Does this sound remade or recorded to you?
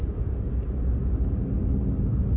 recorded